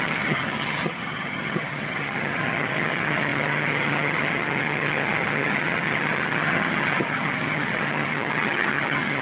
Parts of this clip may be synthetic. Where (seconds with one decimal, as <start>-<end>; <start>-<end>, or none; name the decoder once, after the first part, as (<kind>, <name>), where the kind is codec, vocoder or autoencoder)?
0.0-9.2 (vocoder, HiFi-GAN)